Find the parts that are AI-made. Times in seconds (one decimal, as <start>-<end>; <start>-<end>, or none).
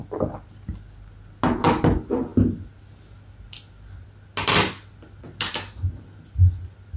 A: none